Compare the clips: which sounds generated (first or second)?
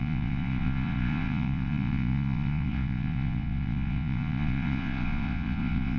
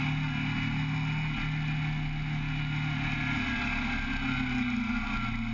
first